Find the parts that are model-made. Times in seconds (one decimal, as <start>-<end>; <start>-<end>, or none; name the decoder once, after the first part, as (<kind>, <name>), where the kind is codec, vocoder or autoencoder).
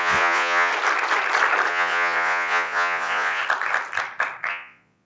0.0-0.7 (vocoder, Vocos); 1.7-3.4; 4.5-5.1